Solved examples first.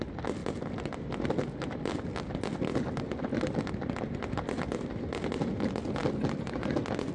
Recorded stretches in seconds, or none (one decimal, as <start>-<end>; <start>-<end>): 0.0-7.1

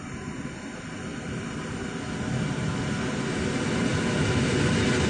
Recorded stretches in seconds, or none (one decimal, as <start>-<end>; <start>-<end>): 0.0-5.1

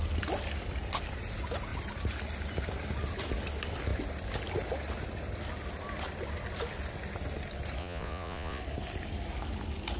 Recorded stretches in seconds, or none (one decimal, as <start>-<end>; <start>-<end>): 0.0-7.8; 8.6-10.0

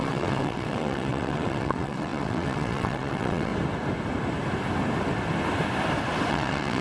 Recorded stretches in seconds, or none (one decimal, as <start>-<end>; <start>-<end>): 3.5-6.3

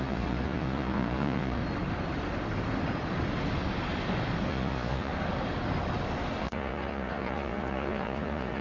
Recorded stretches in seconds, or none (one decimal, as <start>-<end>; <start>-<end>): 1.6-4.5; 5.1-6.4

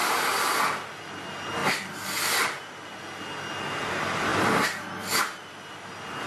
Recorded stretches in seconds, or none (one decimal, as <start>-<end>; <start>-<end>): 0.0-6.3